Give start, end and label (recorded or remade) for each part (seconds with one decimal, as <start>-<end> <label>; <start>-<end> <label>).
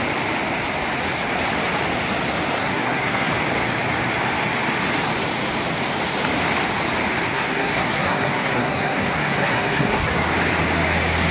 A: 0.0-2.6 recorded; 2.6-3.3 remade; 3.3-7.3 recorded; 7.3-10.3 remade; 10.3-11.3 recorded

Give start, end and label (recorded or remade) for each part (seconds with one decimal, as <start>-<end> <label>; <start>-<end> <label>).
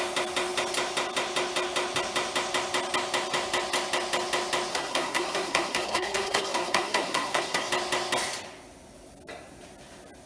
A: 0.0-4.7 recorded; 4.7-7.7 remade; 7.7-10.3 recorded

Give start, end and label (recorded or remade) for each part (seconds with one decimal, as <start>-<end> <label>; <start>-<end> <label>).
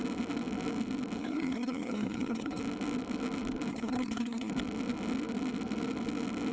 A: 0.0-1.2 recorded; 1.2-2.6 remade; 2.6-3.7 recorded; 3.7-4.5 remade; 4.5-6.5 recorded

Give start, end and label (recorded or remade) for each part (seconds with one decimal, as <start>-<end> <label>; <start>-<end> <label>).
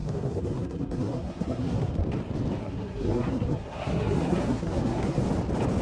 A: 0.0-2.0 remade; 2.0-2.6 recorded; 2.6-5.2 remade; 5.2-5.8 recorded